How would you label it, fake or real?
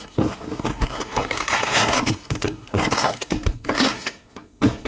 fake